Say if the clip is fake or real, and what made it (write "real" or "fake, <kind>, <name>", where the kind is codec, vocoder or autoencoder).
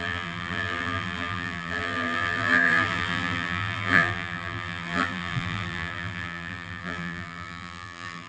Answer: fake, vocoder, BigVGAN v2